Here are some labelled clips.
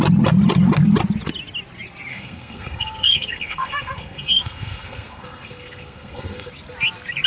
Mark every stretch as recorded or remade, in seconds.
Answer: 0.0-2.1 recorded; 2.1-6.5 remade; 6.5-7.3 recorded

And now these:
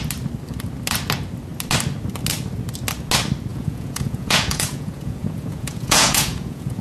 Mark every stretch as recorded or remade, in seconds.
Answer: 0.0-3.5 recorded; 3.5-6.8 remade